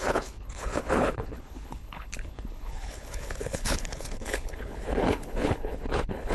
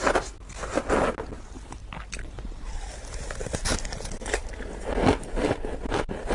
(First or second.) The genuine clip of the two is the second